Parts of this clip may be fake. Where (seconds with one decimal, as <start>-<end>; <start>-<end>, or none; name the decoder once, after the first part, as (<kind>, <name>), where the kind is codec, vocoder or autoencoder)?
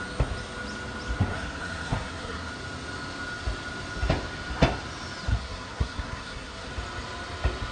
1.3-2.5 (codec, SNAC); 5.3-6.7